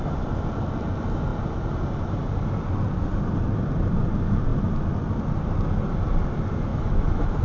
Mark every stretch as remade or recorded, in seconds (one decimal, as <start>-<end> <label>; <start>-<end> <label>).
0.0-6.7 recorded; 6.7-7.4 remade